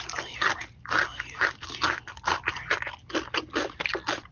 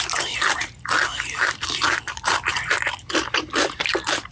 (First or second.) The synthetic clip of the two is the second